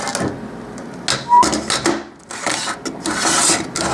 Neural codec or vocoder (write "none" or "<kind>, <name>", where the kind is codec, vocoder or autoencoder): none